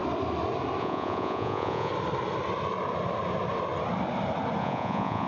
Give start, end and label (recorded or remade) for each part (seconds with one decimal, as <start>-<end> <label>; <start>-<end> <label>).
0.0-0.8 recorded; 0.8-1.9 remade; 1.9-4.6 recorded; 4.6-5.3 remade